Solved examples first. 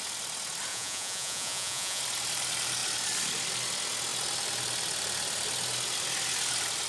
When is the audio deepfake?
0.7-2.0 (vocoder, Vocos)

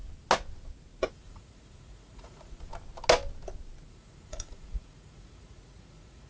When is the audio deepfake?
1.1-2.7 (vocoder, Vocos); 3.9-6.3

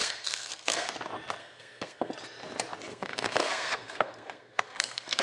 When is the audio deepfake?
0.0-0.9 (codec, SNAC); 1.4-2.1; 2.9-5.2

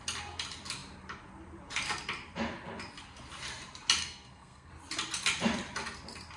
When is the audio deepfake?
4.0-4.7 (codec, SNAC)